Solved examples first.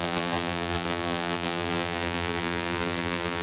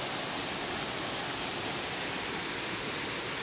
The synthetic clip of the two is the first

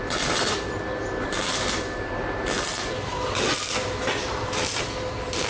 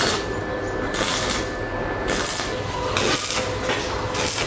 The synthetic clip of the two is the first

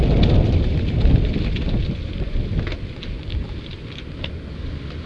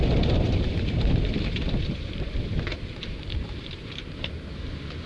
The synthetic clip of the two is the second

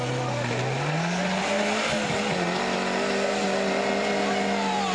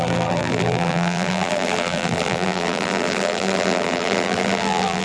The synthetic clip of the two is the second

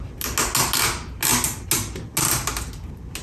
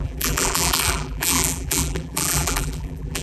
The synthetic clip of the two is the second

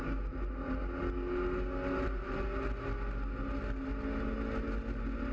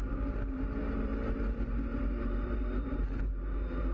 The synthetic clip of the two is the second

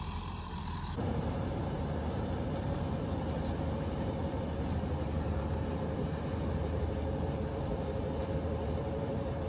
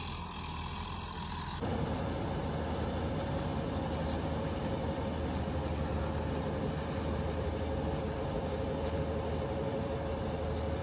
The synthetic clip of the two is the first